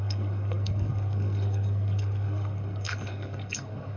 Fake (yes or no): yes